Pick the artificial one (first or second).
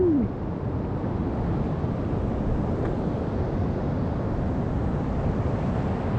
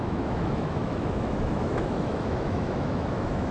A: second